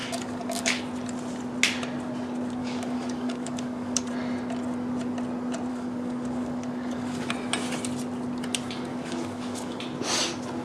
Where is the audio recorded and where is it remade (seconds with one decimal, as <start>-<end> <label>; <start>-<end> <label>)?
0.0-0.8 remade; 0.8-2.6 recorded; 2.6-4.1 remade; 4.1-5.7 recorded; 5.7-7.3 remade; 7.3-8.9 recorded; 8.9-9.8 remade; 9.8-10.6 recorded